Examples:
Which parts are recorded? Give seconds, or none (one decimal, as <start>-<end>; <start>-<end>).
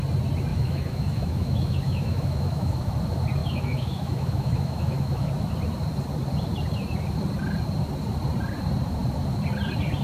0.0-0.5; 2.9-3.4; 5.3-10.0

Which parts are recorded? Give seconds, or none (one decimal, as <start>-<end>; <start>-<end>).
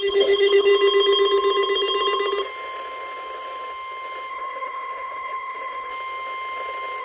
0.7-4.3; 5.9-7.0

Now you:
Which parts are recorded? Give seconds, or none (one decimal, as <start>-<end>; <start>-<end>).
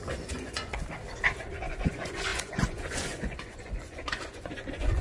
0.7-1.5